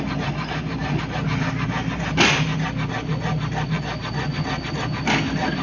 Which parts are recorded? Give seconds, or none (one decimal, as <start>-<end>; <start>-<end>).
0.0-5.6